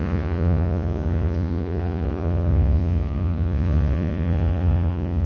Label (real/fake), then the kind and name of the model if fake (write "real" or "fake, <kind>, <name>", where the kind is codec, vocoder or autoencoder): fake, vocoder, Vocos